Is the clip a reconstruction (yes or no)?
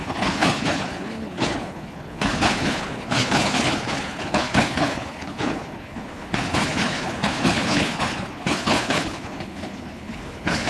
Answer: yes